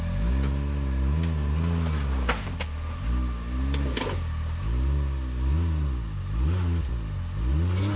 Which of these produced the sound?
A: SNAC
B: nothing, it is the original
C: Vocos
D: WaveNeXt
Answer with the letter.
B